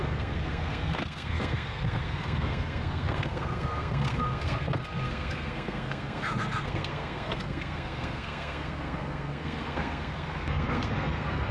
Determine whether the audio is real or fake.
fake